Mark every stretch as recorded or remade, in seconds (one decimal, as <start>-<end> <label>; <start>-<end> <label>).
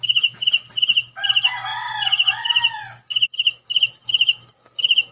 0.0-5.1 recorded